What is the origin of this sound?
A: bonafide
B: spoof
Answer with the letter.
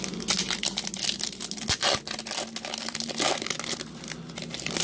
A